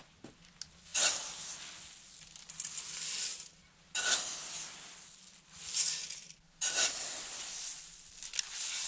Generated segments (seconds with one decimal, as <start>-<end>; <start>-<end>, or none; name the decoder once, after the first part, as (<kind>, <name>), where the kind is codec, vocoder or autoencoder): 6.2-7.8 (vocoder, BigVGAN v2)